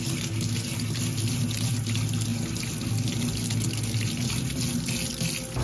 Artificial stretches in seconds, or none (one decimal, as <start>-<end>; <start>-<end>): none